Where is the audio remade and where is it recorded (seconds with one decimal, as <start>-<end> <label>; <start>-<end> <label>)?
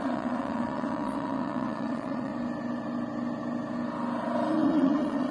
0.0-2.3 remade; 2.3-4.5 recorded; 4.5-5.3 remade